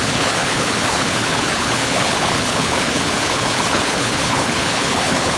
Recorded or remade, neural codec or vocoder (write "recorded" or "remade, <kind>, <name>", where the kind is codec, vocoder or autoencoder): remade, codec, HILCodec